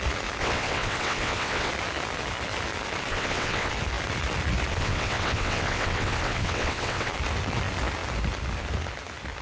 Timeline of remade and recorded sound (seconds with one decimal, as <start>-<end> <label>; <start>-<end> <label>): 0.0-0.4 recorded; 0.4-1.7 remade; 1.7-3.1 recorded; 3.1-3.7 remade; 3.7-4.7 recorded; 4.7-7.1 remade; 7.1-9.4 recorded